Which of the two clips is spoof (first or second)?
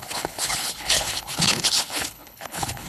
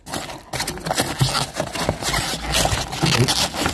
first